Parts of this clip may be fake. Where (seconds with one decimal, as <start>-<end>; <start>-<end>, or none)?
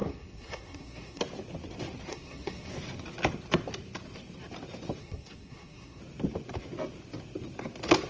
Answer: 0.0-1.2; 2.1-2.7; 5.0-6.0